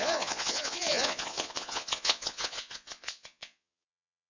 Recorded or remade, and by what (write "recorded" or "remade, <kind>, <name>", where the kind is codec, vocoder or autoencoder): remade, vocoder, Vocos